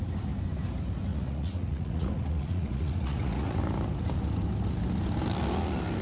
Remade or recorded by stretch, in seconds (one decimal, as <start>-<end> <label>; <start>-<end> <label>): 0.0-1.1 recorded; 1.1-3.6 remade; 3.6-6.0 recorded